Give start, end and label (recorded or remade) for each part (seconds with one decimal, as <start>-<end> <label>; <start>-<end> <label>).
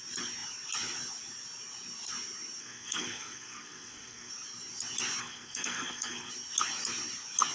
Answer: 0.0-2.6 recorded; 2.6-4.3 remade; 4.3-5.2 recorded; 5.2-6.3 remade; 6.3-7.5 recorded